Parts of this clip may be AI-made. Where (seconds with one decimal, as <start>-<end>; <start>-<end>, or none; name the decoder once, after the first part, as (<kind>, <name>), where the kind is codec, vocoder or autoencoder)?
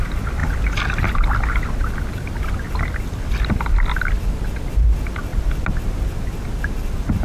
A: none